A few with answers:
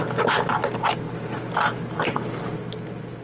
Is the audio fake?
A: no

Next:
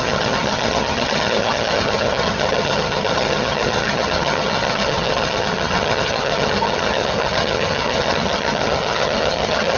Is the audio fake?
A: yes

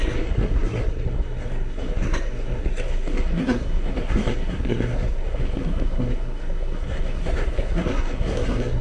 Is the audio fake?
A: yes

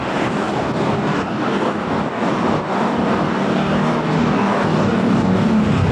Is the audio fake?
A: yes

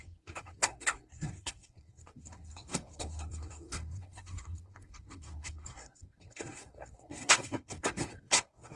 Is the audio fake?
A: yes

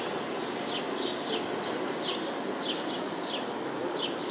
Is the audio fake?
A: no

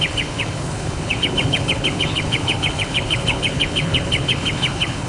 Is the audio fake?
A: yes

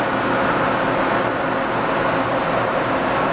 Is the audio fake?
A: no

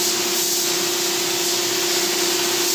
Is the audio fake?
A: no